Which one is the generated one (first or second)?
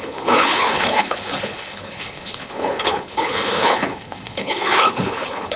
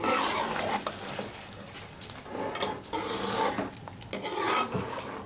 first